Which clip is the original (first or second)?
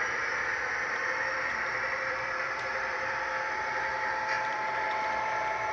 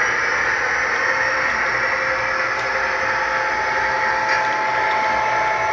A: second